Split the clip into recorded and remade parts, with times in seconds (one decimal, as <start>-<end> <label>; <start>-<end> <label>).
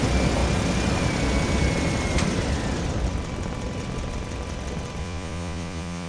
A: 0.0-5.0 recorded; 5.0-6.1 remade